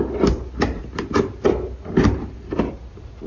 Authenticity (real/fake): real